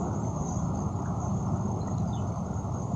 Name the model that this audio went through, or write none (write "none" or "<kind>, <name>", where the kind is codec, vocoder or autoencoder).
none